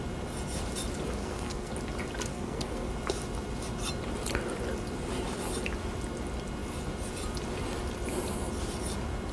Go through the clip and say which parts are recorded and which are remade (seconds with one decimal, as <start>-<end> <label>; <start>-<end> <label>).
0.0-1.2 recorded; 1.2-1.7 remade; 1.7-2.3 recorded; 2.3-2.9 remade; 2.9-9.3 recorded